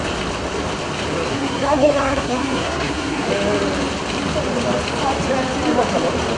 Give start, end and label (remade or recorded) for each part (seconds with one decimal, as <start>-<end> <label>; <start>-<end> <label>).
0.0-1.3 recorded; 1.3-3.3 remade; 3.3-6.4 recorded